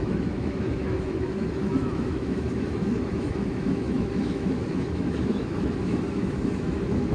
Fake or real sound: fake